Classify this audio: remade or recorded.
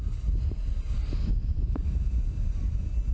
recorded